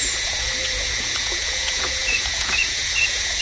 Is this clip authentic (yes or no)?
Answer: no